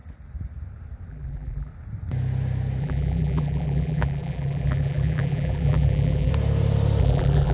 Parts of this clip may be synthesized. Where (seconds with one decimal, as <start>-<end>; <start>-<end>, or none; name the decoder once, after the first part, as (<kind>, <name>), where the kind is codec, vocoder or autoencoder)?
1.1-1.7 (vocoder, BigVGAN v2); 2.8-6.3; 7.0-7.5